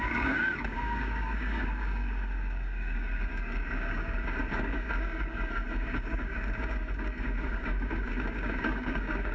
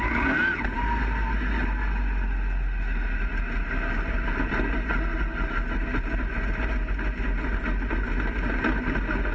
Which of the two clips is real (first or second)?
second